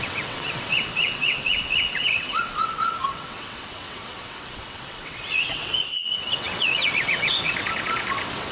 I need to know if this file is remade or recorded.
remade